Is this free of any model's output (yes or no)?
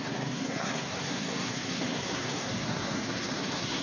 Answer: no